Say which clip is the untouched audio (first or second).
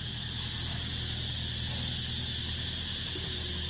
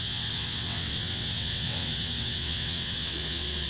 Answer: first